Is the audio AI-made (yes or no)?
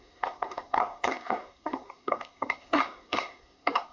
yes